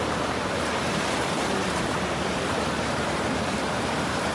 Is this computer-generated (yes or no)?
yes